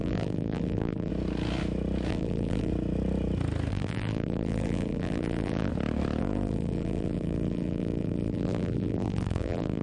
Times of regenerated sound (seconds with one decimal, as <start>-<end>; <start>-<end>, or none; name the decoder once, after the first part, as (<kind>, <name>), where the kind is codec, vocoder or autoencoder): 0.0-1.1 (vocoder, BigVGAN v2); 2.1-2.7; 3.7-5.7; 6.2-9.8